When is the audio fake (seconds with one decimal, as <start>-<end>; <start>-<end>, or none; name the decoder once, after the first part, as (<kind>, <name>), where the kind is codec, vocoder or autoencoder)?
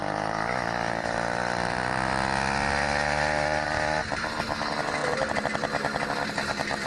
none